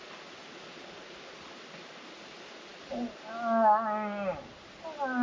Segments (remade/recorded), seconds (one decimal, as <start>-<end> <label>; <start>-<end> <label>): 0.0-5.2 recorded